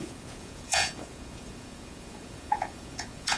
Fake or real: fake